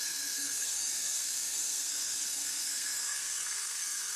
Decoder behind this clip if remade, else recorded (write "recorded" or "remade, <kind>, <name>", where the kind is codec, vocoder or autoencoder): remade, codec, SNAC